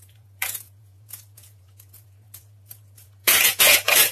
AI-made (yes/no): yes